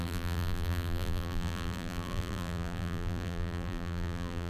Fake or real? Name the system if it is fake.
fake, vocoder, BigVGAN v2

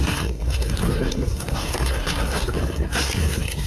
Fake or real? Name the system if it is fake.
fake, codec, SNAC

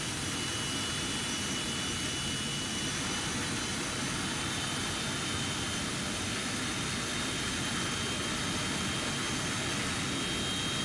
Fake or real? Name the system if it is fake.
real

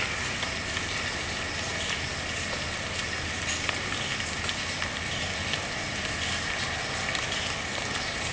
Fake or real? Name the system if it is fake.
real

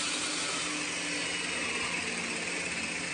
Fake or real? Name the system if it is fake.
real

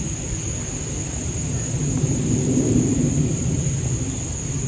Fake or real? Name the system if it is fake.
real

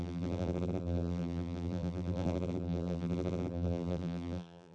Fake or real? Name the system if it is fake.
fake, vocoder, BigVGAN v2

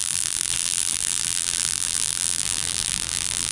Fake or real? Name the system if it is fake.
fake, vocoder, BigVGAN v2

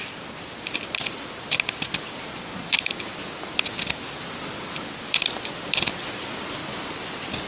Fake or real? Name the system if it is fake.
real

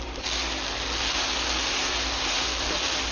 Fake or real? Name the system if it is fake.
real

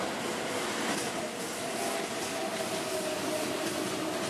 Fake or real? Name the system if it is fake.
real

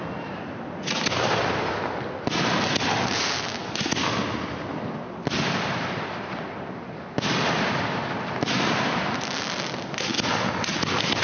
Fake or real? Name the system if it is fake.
real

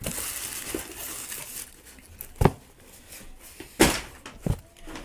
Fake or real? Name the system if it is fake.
real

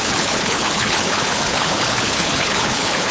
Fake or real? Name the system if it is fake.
fake, codec, HILCodec